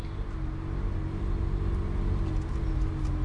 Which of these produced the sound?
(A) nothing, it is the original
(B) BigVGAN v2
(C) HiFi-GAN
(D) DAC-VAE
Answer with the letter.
A